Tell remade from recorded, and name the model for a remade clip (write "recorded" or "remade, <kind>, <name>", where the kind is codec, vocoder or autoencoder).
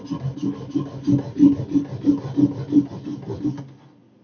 recorded